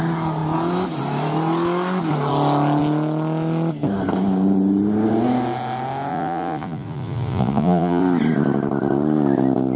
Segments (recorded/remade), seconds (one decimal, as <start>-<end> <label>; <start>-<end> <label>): 0.0-6.1 recorded; 6.1-8.0 remade; 8.0-9.8 recorded